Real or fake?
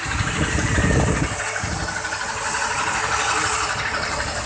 real